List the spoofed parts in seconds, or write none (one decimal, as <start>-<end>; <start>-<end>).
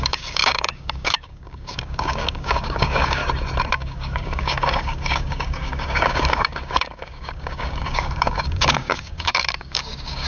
0.0-3.2; 3.7-10.3